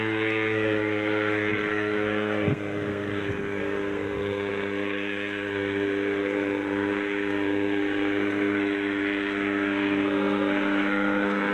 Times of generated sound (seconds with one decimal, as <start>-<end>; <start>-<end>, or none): 0.0-11.5